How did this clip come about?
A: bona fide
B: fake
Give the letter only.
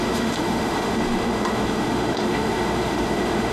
B